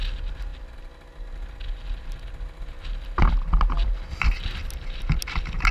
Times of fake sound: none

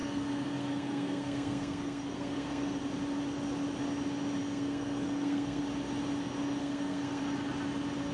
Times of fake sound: 0.0-2.8 (codec, SNAC); 4.4-5.6; 6.6-7.2

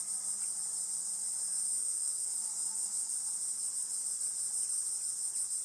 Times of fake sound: 1.8-3.1 (autoencoder, DAC-VAE)

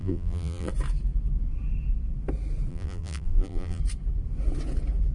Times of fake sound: 0.0-0.7 (vocoder, BigVGAN v2); 2.7-3.8

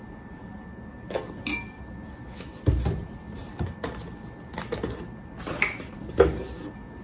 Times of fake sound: none